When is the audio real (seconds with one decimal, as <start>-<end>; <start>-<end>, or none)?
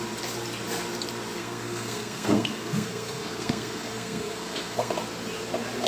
0.0-1.4; 4.9-5.9